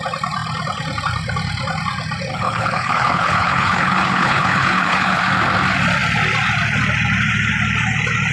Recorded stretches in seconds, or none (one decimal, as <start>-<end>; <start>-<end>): 0.0-2.3; 5.2-8.3